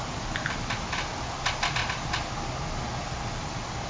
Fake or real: real